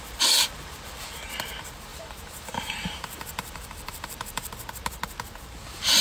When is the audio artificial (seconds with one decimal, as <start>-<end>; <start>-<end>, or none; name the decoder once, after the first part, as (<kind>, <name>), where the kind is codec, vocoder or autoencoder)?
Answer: 1.9-4.5 (vocoder, BigVGAN v2)